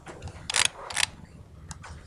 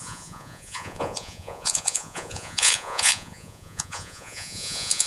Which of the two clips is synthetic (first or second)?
second